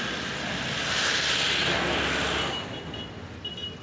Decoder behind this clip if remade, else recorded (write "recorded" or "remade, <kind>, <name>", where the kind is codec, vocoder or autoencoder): recorded